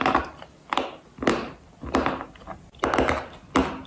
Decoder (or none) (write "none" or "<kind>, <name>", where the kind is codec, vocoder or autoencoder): none